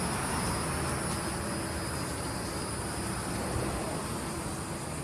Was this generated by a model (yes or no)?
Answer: no